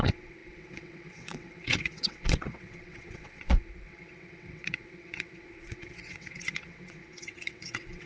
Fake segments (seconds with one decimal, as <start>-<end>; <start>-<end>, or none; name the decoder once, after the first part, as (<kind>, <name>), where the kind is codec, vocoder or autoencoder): 0.0-8.1 (vocoder, WaveNeXt)